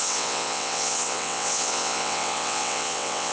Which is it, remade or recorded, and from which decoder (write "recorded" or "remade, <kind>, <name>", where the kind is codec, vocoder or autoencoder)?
remade, vocoder, WaveNeXt